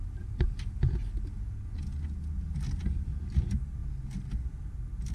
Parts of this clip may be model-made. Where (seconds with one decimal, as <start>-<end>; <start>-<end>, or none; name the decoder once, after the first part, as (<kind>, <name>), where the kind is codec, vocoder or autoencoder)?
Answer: 0.0-1.0 (vocoder, BigVGAN v2); 2.7-3.8